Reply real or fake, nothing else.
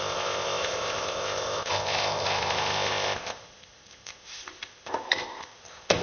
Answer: fake